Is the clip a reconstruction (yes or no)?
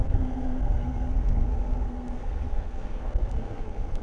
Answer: yes